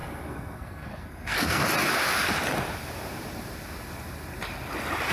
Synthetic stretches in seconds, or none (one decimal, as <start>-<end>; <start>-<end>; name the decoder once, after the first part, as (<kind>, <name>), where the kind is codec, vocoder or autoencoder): 0.0-1.6 (codec, SNAC)

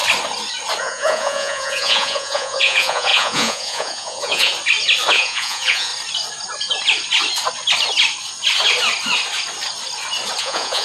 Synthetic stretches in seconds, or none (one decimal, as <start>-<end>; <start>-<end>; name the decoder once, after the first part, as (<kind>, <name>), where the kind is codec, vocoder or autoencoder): 0.8-4.5 (vocoder, Vocos); 5.1-5.9; 10.4-10.8

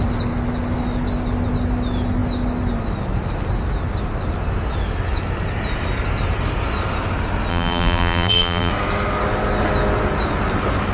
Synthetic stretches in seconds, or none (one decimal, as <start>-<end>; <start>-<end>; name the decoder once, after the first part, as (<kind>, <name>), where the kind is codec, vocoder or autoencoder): 7.5-8.7 (vocoder, BigVGAN v2)

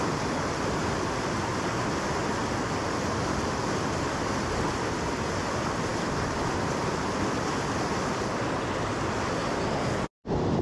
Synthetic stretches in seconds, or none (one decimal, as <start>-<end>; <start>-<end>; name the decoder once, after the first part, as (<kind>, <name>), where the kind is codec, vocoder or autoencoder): none

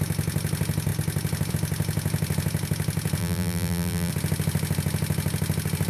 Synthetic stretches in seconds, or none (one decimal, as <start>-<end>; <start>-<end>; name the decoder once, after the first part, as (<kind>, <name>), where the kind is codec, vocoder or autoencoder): 3.2-4.1 (vocoder, BigVGAN v2)

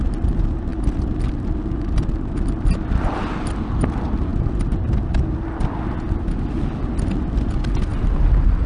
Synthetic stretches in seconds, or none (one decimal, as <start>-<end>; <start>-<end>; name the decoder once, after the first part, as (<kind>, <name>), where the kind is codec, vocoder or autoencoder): none